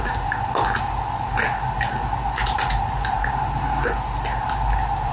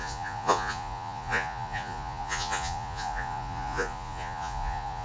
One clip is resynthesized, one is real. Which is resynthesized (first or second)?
second